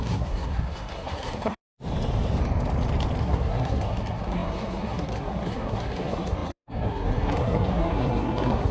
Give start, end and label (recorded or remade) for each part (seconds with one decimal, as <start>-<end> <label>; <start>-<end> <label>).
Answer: 0.0-1.6 remade; 1.6-3.2 recorded; 3.2-8.7 remade